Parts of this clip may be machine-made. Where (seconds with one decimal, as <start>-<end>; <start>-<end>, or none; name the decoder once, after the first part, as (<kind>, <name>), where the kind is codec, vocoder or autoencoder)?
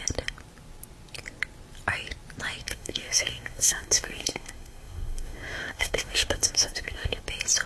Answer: 2.6-7.2 (codec, SNAC)